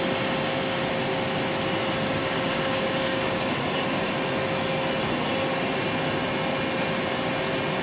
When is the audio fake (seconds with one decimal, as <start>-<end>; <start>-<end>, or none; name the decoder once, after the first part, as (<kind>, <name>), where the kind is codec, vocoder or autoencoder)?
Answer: 2.2-3.4 (codec, DAC)